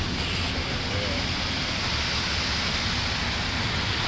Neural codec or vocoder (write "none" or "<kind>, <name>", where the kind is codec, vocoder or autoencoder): none